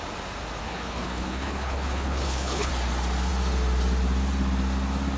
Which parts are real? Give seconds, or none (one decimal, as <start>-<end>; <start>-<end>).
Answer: 0.0-0.6; 2.7-5.2